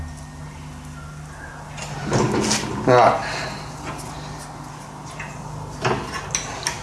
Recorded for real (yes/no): yes